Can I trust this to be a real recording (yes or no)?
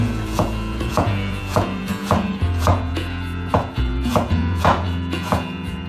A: no